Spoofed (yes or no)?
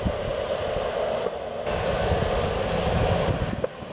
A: no